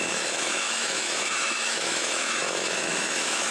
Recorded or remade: remade